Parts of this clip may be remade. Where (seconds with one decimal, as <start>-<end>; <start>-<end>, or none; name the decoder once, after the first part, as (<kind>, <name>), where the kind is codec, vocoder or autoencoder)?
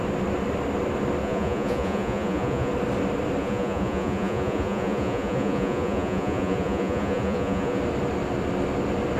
1.2-2.7 (vocoder, Vocos); 3.4-7.8